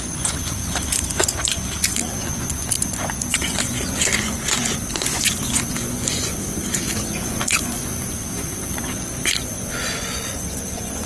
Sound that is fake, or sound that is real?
fake